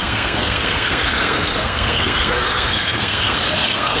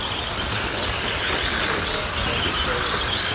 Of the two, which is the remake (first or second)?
first